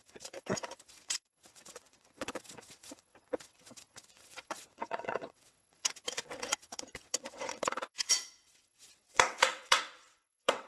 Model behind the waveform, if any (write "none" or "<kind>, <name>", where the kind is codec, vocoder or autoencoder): vocoder, WaveNeXt